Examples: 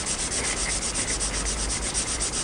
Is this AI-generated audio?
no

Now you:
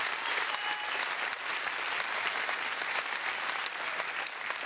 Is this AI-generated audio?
no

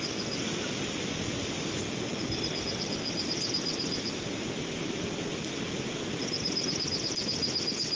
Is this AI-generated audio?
no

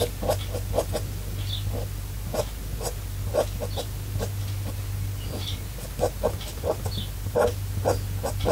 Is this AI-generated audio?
no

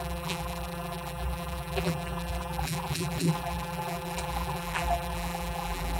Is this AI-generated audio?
yes